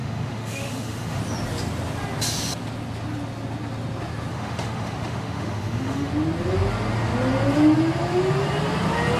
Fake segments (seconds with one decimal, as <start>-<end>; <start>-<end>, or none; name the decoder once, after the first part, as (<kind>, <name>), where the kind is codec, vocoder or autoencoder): 0.0-1.2 (autoencoder, DAC-VAE); 4.3-6.1